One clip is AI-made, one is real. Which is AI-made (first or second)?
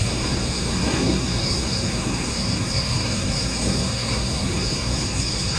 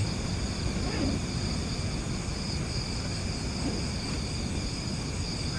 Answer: first